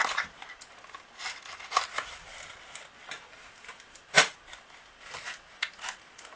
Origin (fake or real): real